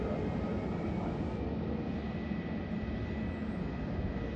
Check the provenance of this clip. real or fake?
real